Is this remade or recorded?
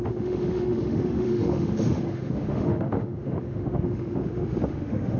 remade